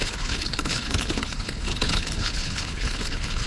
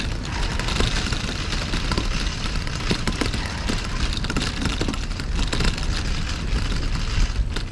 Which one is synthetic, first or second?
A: first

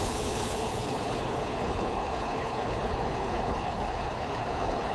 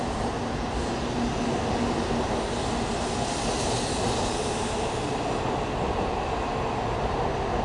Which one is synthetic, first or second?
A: first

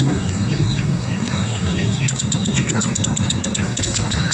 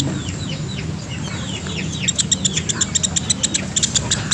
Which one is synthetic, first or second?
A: first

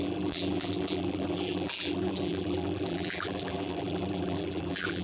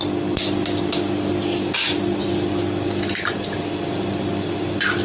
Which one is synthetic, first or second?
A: first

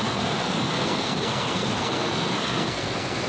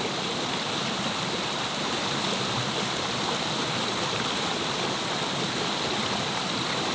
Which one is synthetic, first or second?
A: first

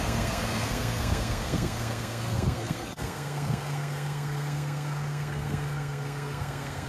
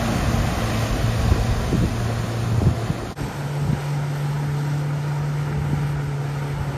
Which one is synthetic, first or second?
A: first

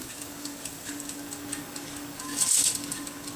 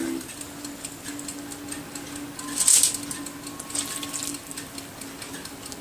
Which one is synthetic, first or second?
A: first